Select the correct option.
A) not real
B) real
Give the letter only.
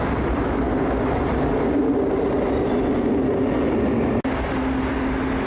B